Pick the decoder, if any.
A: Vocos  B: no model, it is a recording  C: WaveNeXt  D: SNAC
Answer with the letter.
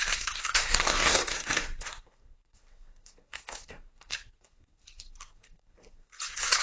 D